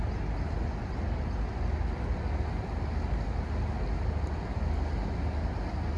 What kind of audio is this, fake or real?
real